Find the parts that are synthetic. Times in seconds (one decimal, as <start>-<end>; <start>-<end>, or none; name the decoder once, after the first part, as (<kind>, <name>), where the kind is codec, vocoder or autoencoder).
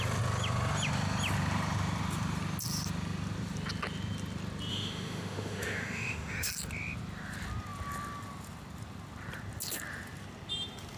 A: 4.7-6.5 (autoencoder, DAC-VAE)